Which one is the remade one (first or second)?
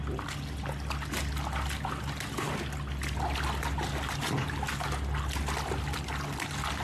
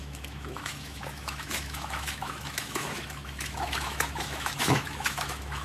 second